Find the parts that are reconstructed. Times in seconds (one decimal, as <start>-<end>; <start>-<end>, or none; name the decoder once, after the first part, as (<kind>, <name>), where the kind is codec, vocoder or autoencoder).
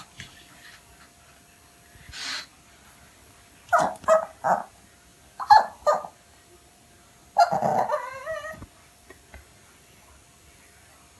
none